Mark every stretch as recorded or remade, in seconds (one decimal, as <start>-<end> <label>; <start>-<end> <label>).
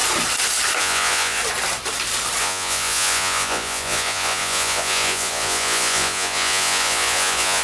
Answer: 0.0-0.8 recorded; 0.8-1.4 remade; 1.4-2.4 recorded; 2.4-7.6 remade